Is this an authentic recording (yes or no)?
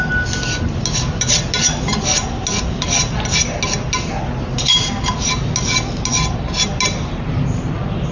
yes